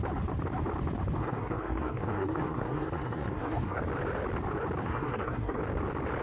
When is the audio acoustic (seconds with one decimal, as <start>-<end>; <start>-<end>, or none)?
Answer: 0.0-1.2; 3.8-4.8; 5.6-6.2

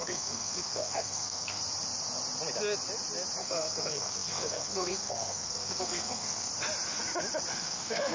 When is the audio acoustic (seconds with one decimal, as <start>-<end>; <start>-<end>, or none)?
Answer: 1.6-3.4; 6.5-7.5

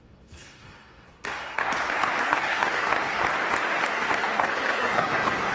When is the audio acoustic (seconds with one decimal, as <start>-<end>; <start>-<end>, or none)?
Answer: 1.7-2.2; 3.2-3.9

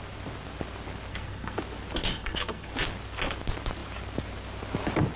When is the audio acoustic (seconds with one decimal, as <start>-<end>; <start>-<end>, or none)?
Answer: 0.0-1.1; 1.6-2.1; 2.7-5.2